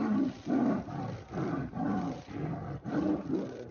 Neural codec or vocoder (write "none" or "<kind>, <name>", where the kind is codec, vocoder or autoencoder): none